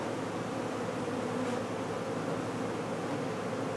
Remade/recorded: recorded